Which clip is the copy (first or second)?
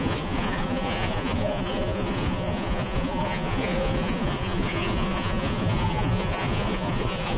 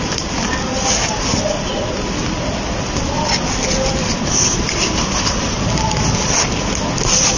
first